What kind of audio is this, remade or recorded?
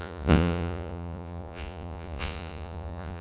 remade